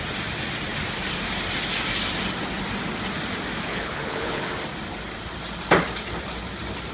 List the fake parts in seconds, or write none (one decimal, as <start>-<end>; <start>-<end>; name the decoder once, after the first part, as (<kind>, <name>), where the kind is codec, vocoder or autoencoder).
3.7-4.5 (codec, HILCodec)